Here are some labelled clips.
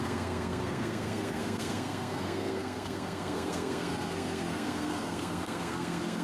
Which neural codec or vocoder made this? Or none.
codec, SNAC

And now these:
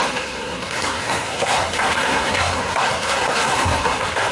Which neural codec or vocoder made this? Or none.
codec, SNAC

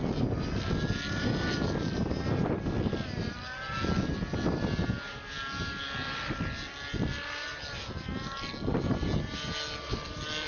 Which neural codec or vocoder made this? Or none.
none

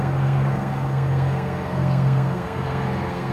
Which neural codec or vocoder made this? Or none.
codec, SNAC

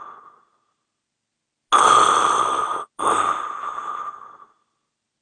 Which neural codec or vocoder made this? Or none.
none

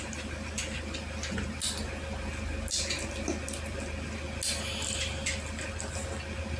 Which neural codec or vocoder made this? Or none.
none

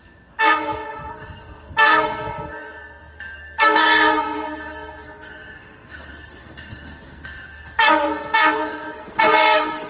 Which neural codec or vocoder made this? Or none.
codec, SNAC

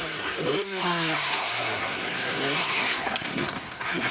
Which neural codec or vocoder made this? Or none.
codec, SNAC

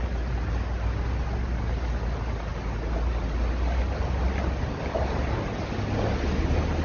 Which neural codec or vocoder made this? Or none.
none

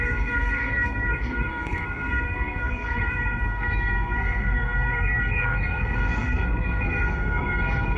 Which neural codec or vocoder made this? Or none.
codec, SNAC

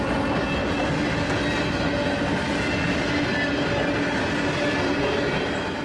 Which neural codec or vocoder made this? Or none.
none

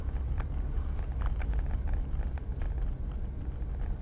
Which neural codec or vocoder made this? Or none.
none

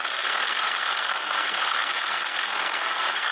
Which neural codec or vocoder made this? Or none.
codec, SNAC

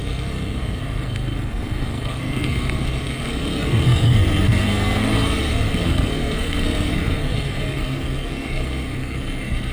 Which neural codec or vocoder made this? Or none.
codec, SNAC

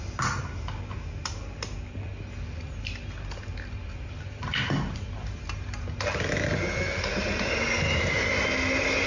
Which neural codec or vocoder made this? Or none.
none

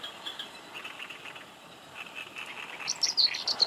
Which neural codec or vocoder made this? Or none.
none